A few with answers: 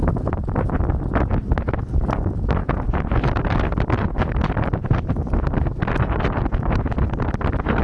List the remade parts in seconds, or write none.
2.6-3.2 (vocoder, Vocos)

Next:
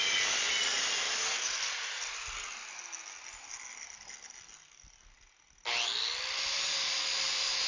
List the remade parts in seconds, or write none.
none

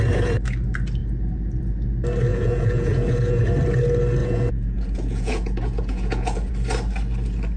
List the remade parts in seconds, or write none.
2.3-3.4 (vocoder, Vocos); 4.2-6.5

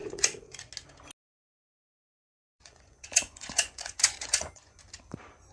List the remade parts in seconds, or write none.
0.0-0.7 (vocoder, Vocos); 1.5-4.8